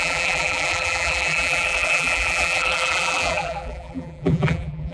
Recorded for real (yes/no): no